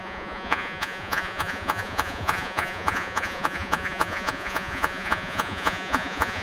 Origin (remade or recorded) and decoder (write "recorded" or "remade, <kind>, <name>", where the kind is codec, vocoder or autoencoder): remade, vocoder, Vocos